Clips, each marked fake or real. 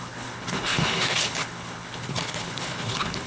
fake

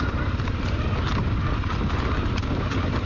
real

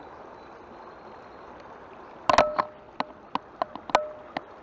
real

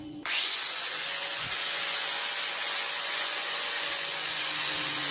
fake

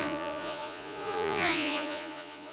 fake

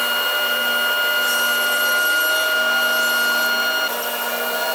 real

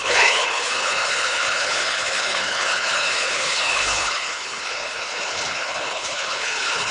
fake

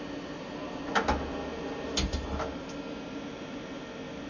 real